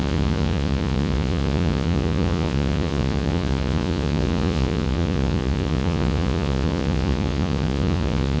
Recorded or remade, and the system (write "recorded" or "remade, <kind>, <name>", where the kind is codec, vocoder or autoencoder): remade, vocoder, Vocos